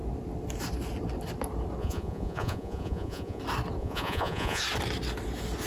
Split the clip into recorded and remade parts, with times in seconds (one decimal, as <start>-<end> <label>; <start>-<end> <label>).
0.0-1.8 recorded; 1.8-3.4 remade; 3.4-3.8 recorded; 3.8-4.6 remade; 4.6-5.7 recorded